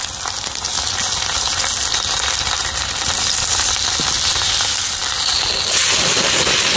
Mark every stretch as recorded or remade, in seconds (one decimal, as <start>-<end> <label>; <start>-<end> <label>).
0.0-6.8 recorded

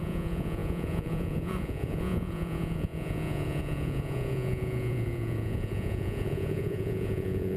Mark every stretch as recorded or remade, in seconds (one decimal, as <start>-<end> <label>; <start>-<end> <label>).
0.0-7.6 remade

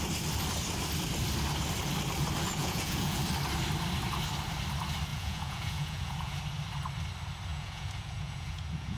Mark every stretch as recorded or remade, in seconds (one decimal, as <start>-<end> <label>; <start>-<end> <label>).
0.0-2.6 recorded; 2.6-3.2 remade; 3.2-5.1 recorded; 5.1-6.4 remade; 6.4-7.5 recorded; 7.5-9.0 remade